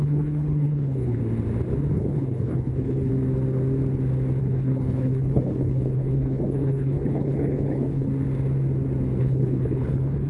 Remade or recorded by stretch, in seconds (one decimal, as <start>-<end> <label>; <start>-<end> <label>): 0.0-1.2 remade; 1.2-1.9 recorded; 1.9-3.1 remade; 3.1-4.4 recorded; 4.4-8.1 remade; 8.1-9.2 recorded; 9.2-10.3 remade